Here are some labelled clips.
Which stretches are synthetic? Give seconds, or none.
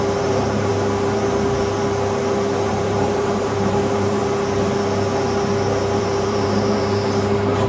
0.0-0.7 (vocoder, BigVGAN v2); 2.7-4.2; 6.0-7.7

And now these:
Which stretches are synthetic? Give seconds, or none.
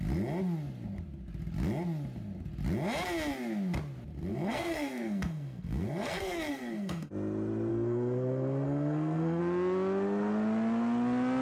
4.3-7.1 (codec, SNAC); 7.7-9.4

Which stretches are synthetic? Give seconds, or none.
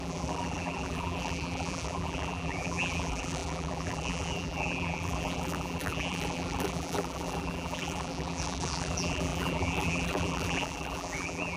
0.0-11.6 (vocoder, BigVGAN v2)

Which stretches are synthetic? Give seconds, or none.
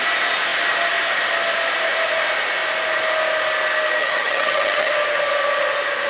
4.0-4.9 (vocoder, HiFi-GAN)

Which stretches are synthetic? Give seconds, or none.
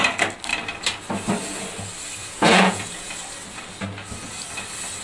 2.2-3.1 (vocoder, Vocos)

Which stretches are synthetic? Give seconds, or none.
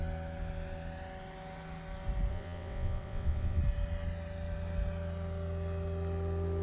2.3-3.6 (vocoder, WaveNeXt)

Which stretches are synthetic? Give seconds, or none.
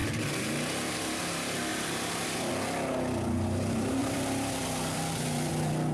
1.7-2.5 (vocoder, BigVGAN v2); 4.0-5.5